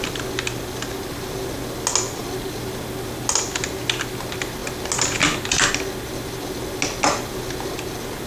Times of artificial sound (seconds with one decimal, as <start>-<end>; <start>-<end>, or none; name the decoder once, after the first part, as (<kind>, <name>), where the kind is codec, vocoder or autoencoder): none